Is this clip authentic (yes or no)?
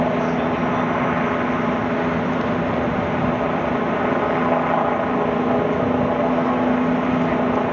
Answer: yes